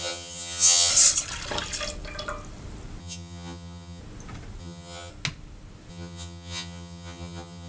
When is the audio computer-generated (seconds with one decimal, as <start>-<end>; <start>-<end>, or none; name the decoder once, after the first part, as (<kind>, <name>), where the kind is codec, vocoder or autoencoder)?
0.0-0.9 (vocoder, HiFi-GAN); 3.0-4.0; 4.6-5.1; 5.9-7.7

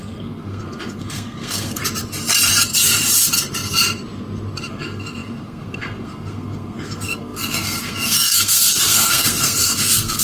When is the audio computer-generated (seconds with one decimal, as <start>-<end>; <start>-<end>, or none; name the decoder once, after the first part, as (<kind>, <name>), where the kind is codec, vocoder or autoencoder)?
0.0-1.8 (codec, SNAC); 4.7-10.2

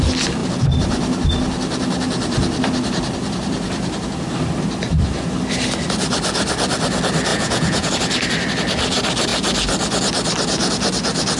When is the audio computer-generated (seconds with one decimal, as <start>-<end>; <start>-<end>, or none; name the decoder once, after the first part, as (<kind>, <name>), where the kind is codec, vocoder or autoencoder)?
7.3-7.9 (vocoder, Vocos)

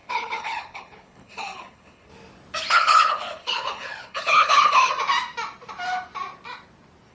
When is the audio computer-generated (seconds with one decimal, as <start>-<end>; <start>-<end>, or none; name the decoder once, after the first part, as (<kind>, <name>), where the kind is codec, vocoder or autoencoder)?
0.0-2.1 (codec, HILCodec); 2.7-4.9

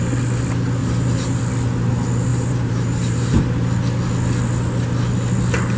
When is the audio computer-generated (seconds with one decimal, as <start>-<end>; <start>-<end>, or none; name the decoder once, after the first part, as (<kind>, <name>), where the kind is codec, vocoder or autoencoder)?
0.8-1.4 (vocoder, BigVGAN v2); 2.3-3.4